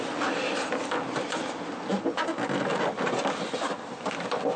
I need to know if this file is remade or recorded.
recorded